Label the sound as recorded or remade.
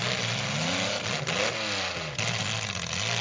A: recorded